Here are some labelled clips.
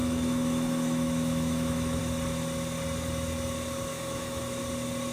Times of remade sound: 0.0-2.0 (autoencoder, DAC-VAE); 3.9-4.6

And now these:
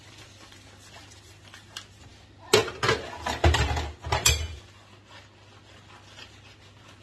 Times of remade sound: none

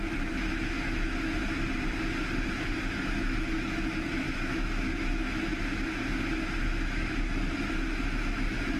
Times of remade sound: 0.0-1.4 (autoencoder, DAC-VAE); 2.5-5.5; 6.6-8.8

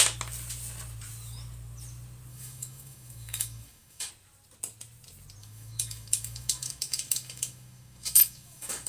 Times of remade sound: 2.3-4.1 (autoencoder, DAC-VAE); 5.4-8.9